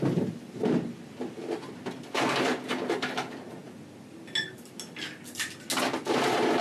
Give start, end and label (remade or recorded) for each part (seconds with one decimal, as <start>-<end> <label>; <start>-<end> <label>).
0.0-6.6 recorded